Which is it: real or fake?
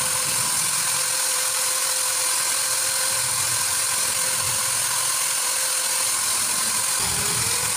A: real